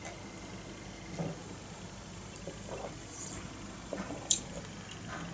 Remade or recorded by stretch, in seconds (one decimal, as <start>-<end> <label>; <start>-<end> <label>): 0.0-1.4 recorded; 1.4-4.6 remade; 4.6-5.3 recorded